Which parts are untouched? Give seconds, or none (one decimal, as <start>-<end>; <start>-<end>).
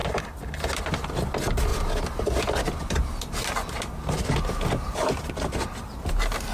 0.0-1.7; 4.3-6.5